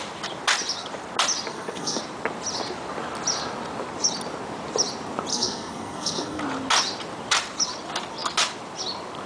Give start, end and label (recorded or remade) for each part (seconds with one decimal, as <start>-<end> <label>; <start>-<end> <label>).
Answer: 0.0-1.5 recorded; 1.5-2.0 remade; 2.0-5.3 recorded; 5.3-6.4 remade; 6.4-9.3 recorded